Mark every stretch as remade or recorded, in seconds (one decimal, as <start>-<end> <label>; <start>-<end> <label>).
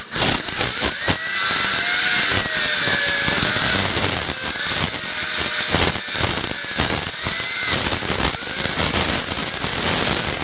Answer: 0.0-10.4 recorded